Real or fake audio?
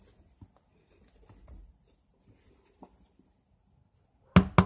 real